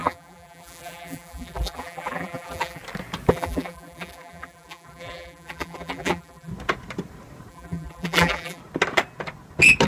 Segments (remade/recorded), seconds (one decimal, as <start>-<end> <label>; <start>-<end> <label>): 0.0-2.8 remade; 2.8-3.3 recorded; 3.3-6.5 remade; 6.5-7.5 recorded; 7.5-8.6 remade; 8.6-9.9 recorded